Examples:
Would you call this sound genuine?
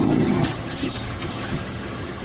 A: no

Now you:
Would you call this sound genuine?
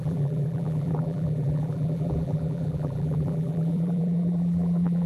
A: no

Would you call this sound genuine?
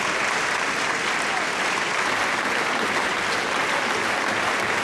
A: yes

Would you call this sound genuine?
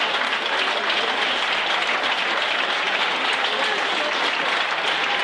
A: yes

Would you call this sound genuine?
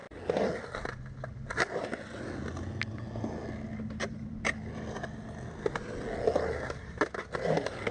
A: yes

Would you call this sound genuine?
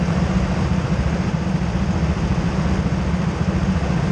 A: yes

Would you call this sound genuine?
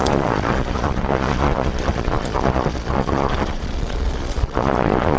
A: no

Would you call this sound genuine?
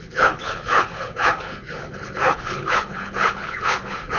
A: no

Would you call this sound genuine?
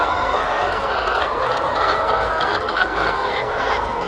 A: no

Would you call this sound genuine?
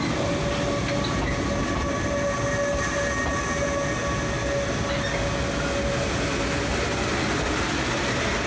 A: yes